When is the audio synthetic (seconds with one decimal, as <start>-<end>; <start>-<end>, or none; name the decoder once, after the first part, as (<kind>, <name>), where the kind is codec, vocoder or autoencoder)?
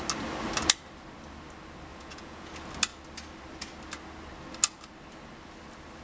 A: 1.9-2.5 (vocoder, Vocos)